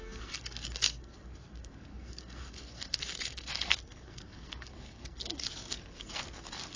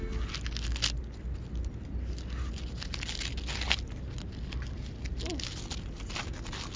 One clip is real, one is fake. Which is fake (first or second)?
first